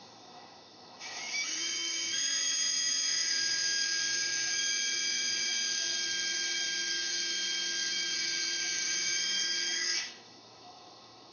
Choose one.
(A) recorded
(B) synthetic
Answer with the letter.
B